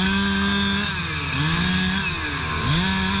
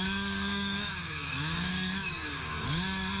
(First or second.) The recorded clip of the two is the first